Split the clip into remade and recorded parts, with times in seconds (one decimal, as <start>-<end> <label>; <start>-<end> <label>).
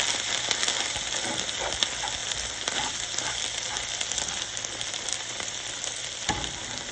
0.0-2.2 recorded; 2.2-6.3 remade; 6.3-6.9 recorded